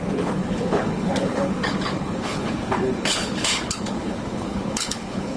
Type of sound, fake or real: fake